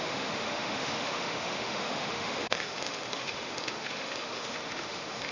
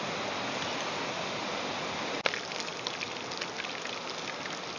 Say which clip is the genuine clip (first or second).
second